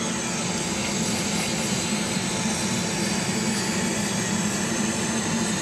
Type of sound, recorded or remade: recorded